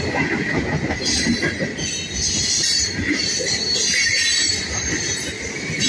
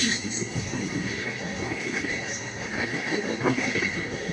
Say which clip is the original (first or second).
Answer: first